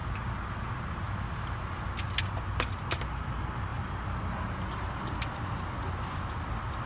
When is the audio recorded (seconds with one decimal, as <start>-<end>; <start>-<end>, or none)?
0.0-6.9